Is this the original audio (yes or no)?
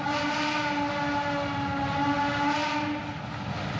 yes